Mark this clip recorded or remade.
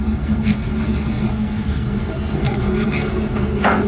remade